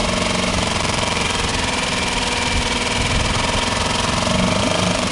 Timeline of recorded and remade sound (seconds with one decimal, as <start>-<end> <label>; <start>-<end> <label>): 0.0-0.5 recorded; 0.5-1.5 remade; 1.5-4.6 recorded; 4.6-5.1 remade